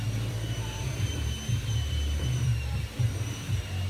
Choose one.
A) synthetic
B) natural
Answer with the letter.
A